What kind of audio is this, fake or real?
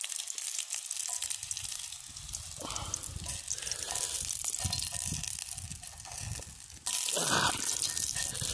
real